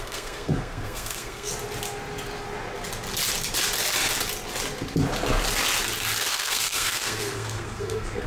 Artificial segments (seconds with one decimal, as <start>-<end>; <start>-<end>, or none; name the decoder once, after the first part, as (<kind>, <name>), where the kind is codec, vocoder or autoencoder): 0.0-1.5 (codec, SNAC); 6.3-8.3